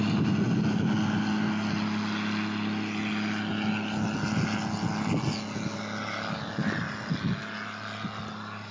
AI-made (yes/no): no